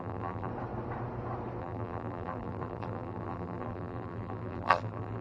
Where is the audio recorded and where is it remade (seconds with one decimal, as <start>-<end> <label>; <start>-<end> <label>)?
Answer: 0.0-0.5 remade; 0.5-1.6 recorded; 1.6-5.2 remade